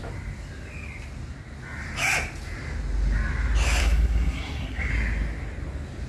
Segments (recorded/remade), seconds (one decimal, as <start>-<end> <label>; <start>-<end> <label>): 0.0-3.8 recorded; 3.8-4.9 remade; 4.9-6.1 recorded